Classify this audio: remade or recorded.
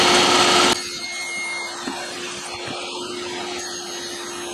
recorded